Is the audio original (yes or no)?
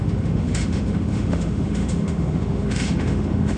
no